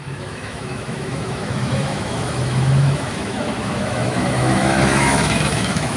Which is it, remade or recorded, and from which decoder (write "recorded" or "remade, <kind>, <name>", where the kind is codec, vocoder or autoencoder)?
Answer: remade, autoencoder, DAC-VAE